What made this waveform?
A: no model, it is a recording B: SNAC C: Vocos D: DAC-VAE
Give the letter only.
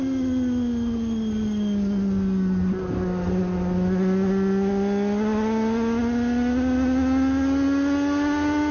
A